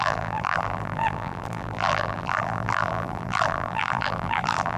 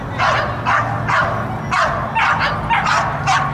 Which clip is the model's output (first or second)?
first